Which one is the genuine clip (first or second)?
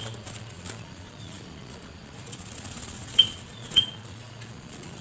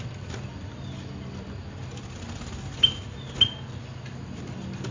second